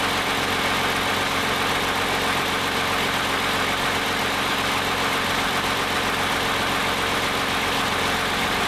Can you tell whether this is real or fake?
real